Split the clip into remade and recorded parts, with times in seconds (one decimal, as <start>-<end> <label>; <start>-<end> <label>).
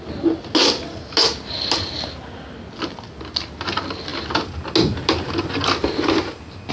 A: 0.0-6.7 recorded